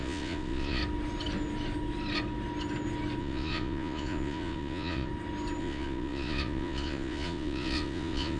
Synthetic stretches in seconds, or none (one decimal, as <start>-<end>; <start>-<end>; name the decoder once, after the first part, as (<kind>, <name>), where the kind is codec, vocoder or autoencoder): 0.0-0.8 (vocoder, Vocos); 3.2-5.1; 5.6-8.4